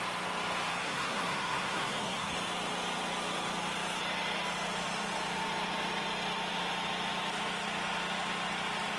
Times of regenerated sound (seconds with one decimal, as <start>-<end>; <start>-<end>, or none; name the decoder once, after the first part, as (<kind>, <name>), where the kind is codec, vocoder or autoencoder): 0.7-2.3 (codec, SNAC)

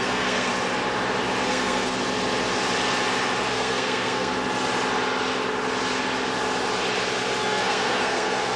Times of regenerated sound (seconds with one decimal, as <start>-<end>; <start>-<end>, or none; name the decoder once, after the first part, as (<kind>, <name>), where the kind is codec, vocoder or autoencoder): 0.0-0.5 (codec, SNAC); 1.5-2.0; 3.5-4.3; 7.4-8.6

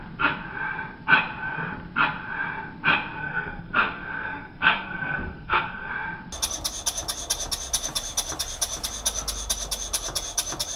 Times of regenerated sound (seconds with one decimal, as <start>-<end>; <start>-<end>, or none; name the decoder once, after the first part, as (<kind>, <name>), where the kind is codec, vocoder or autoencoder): 3.2-5.9 (codec, SNAC)

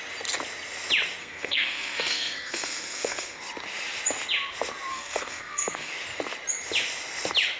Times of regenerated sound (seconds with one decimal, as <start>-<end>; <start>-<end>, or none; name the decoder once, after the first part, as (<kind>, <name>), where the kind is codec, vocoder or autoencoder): 1.2-3.4 (codec, SNAC); 4.9-5.9

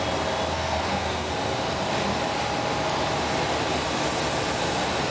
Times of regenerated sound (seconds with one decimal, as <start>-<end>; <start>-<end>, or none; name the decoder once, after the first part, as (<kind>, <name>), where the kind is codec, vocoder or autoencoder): 0.5-1.3 (codec, SNAC)

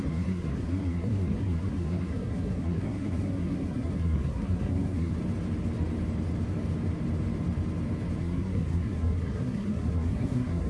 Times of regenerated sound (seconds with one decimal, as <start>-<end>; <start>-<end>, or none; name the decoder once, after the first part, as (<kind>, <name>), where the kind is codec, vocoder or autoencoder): 0.0-5.1 (codec, SNAC); 8.2-10.7

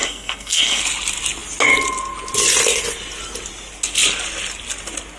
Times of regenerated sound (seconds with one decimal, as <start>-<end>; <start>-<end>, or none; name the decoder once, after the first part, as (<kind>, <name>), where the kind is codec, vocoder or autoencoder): 0.0-0.8 (codec, SNAC)